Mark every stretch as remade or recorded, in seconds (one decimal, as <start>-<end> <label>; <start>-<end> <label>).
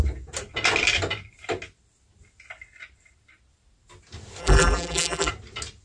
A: 0.0-4.4 recorded; 4.4-5.3 remade; 5.3-5.8 recorded